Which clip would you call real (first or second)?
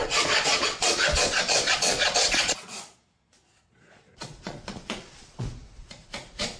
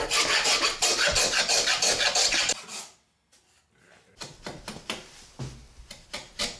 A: second